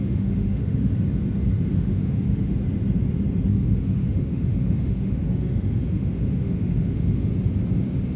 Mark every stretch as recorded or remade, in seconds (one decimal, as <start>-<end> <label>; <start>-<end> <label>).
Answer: 0.0-0.9 remade; 0.9-1.7 recorded; 1.7-2.5 remade; 2.5-3.5 recorded; 3.5-7.3 remade; 7.3-8.2 recorded